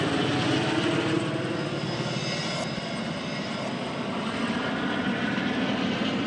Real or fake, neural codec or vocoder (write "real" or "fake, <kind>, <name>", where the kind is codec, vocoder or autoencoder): real